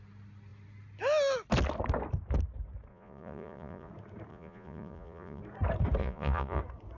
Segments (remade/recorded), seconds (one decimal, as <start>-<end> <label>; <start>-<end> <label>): 0.0-2.9 recorded; 2.9-3.9 remade; 3.9-4.3 recorded; 4.3-5.4 remade; 5.4-6.0 recorded; 6.0-6.6 remade; 6.6-7.0 recorded